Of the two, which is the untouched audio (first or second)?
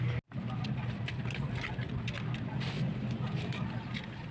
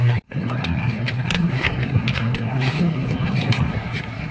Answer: first